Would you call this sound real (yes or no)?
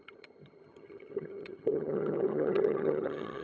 no